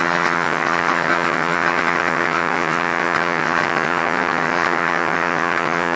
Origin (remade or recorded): remade